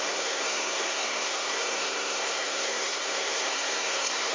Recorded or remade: remade